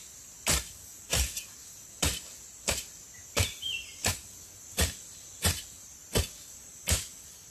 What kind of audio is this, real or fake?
real